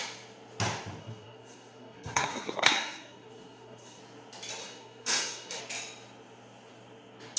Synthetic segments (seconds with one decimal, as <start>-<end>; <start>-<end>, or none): 1.0-4.0; 4.6-5.6